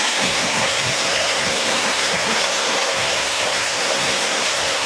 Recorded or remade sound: remade